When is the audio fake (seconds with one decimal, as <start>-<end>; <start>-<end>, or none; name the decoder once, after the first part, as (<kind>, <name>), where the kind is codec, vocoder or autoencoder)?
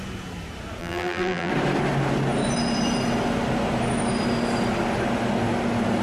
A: 0.8-1.5 (vocoder, BigVGAN v2)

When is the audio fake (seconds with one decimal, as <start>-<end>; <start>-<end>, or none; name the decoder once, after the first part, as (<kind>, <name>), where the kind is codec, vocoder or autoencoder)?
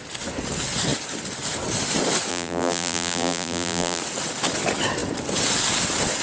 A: 2.3-4.0 (vocoder, BigVGAN v2)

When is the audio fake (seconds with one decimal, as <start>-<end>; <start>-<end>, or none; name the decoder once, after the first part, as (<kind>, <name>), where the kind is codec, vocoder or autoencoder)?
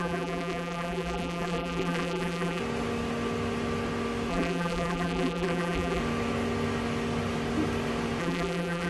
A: 0.0-2.6 (vocoder, BigVGAN v2); 4.3-6.0; 8.2-8.9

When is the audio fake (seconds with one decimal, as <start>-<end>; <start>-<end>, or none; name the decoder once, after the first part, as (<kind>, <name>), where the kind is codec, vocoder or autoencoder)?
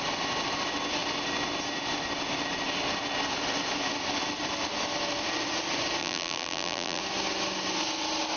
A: 6.0-7.0 (vocoder, BigVGAN v2)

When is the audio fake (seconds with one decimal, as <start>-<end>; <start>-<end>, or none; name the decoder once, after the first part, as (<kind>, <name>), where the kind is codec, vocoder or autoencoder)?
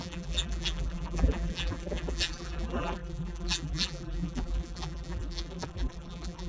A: 0.0-6.5 (vocoder, BigVGAN v2)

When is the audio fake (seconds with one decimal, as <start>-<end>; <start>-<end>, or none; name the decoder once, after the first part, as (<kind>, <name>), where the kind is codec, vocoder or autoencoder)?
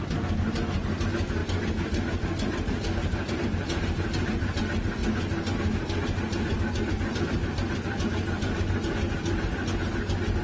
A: none